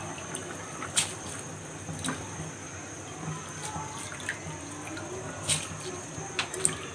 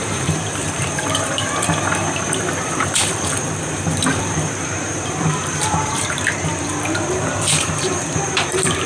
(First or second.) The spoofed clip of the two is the second